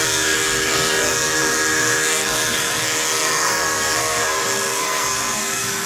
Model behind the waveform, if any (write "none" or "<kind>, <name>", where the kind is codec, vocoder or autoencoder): codec, SNAC